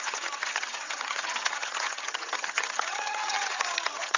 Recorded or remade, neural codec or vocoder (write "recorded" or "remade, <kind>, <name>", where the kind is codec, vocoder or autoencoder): remade, vocoder, HiFi-GAN